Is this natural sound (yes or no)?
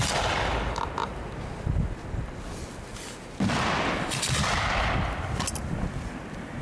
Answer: yes